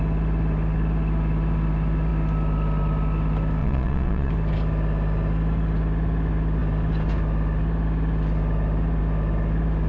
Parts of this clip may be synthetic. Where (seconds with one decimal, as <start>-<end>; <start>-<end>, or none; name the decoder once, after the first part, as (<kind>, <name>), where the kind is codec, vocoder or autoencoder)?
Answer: 3.6-4.3 (vocoder, Vocos)